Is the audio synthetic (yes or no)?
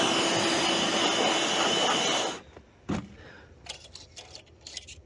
no